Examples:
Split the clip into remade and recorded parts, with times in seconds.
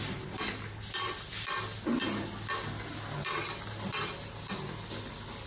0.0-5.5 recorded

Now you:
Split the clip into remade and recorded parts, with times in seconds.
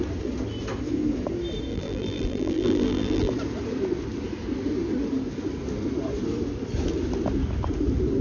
0.0-1.7 recorded; 1.7-3.3 remade; 3.3-8.2 recorded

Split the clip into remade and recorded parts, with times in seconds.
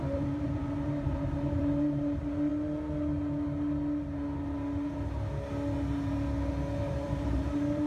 0.0-2.5 remade; 2.5-6.8 recorded; 6.8-7.9 remade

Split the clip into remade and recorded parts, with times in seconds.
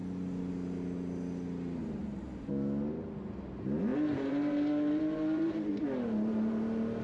0.0-2.0 recorded; 2.0-2.5 remade; 2.5-3.9 recorded; 3.9-5.7 remade; 5.7-7.0 recorded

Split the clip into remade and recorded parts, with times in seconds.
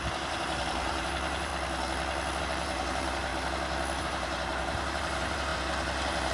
0.0-1.5 remade; 1.5-2.4 recorded; 2.4-3.3 remade; 3.3-4.0 recorded; 4.0-6.3 remade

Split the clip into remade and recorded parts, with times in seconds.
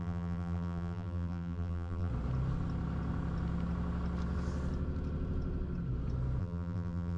0.0-2.1 remade; 2.1-6.4 recorded; 6.4-7.2 remade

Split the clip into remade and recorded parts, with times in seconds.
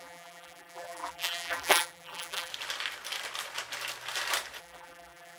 0.0-2.5 remade; 2.5-4.6 recorded; 4.6-5.4 remade